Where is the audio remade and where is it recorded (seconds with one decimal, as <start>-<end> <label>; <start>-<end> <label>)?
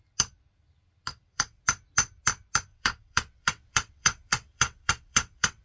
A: 0.0-1.1 recorded; 1.1-1.6 remade; 1.6-2.7 recorded; 2.7-5.6 remade